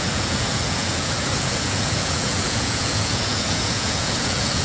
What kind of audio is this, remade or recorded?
remade